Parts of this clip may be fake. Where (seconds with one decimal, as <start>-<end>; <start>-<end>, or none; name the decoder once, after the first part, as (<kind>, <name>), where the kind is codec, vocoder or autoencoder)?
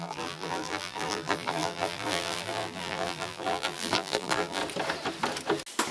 0.0-4.6 (vocoder, BigVGAN v2)